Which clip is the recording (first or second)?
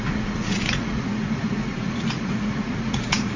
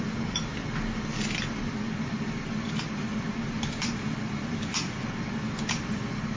second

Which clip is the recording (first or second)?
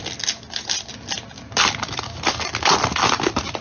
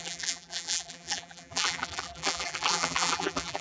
first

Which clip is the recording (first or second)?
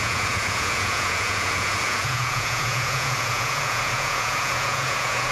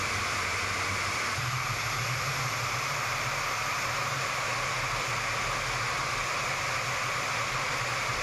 second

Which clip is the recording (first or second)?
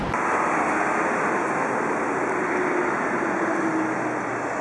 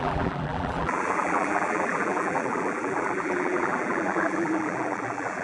first